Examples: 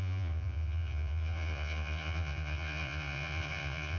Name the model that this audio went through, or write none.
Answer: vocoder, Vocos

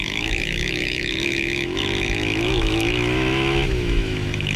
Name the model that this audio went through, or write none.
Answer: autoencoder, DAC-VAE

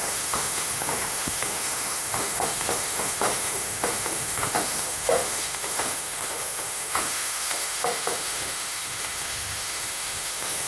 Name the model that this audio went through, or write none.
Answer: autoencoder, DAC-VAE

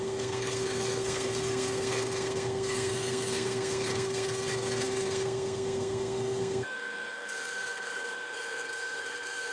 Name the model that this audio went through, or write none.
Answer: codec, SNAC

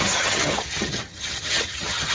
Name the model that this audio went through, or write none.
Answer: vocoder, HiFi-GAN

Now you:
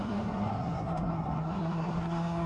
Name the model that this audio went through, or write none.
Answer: codec, SNAC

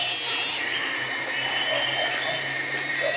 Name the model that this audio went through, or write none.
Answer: none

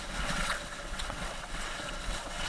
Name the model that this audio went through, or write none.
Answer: vocoder, WaveNeXt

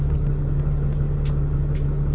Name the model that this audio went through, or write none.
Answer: none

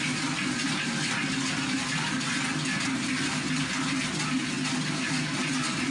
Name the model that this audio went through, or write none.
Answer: none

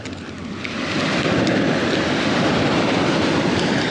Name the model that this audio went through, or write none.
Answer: none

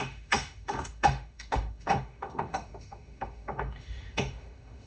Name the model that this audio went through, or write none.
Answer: autoencoder, DAC-VAE